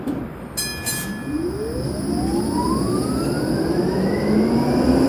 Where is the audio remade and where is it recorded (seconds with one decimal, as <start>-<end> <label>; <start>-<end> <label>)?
0.0-5.1 recorded